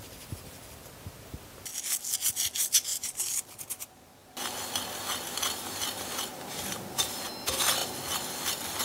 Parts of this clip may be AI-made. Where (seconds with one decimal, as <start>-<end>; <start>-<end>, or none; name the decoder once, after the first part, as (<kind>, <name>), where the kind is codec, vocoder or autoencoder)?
2.9-3.4 (vocoder, BigVGAN v2); 6.3-7.3